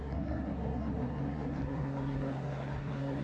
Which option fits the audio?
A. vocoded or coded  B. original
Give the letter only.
A